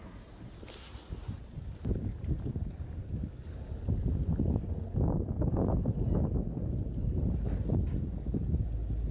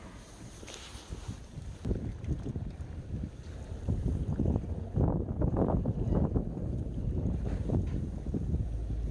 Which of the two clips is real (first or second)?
first